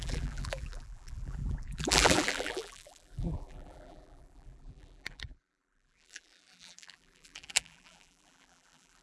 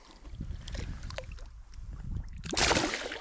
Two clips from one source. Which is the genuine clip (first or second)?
second